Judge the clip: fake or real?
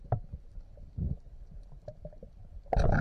real